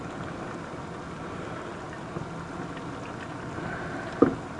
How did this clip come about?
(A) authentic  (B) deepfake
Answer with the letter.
A